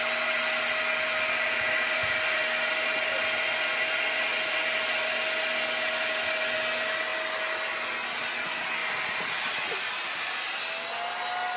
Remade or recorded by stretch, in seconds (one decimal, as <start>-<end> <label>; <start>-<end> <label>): 0.0-11.6 recorded